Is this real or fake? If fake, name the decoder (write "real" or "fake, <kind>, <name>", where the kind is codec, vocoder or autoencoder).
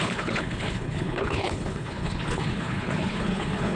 fake, codec, HILCodec